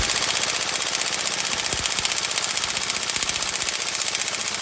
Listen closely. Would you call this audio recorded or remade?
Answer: recorded